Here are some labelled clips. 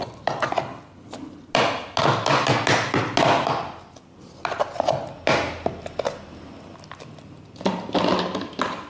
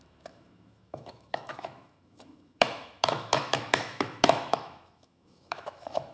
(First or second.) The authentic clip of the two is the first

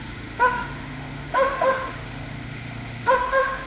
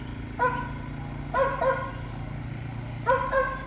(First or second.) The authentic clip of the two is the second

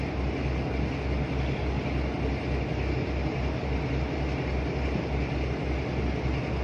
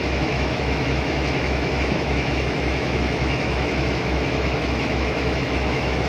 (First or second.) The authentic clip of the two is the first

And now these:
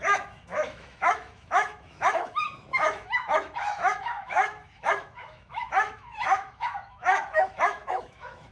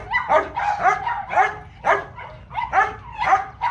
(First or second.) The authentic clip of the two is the second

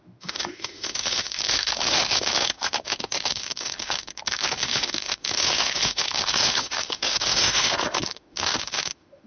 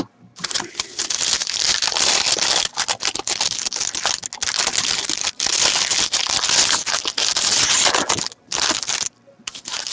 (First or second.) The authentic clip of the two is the second